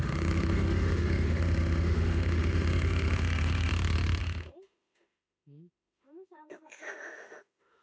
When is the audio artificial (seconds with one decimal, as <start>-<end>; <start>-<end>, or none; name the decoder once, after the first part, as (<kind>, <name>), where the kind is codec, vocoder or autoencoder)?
0.0-3.7 (autoencoder, DAC-VAE); 4.2-7.8